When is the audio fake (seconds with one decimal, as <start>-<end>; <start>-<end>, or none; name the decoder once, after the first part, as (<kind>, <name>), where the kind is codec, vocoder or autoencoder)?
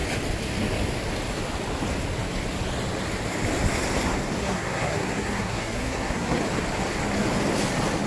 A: 4.4-6.4 (codec, SNAC)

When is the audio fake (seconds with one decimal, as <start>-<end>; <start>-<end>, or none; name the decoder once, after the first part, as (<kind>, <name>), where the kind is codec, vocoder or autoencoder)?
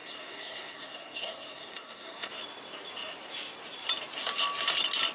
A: 0.0-2.3 (codec, SNAC)